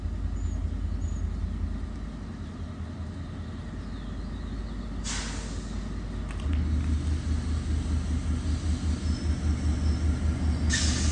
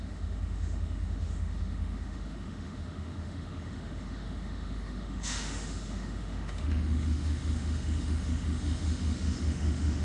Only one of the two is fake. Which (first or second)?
second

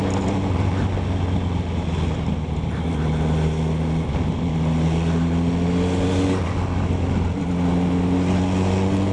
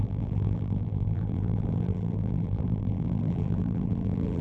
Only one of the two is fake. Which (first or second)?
second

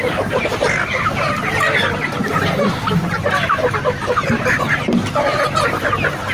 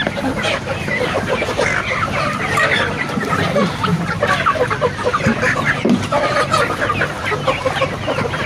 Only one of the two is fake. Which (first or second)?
second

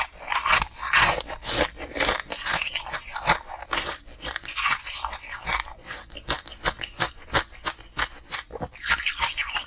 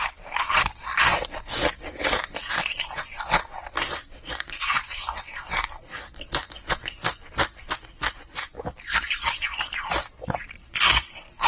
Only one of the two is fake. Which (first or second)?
second